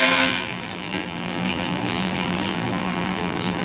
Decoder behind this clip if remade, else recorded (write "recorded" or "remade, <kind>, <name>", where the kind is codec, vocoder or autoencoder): remade, vocoder, BigVGAN v2